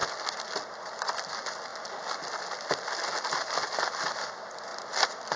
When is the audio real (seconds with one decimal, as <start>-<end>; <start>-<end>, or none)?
0.0-5.4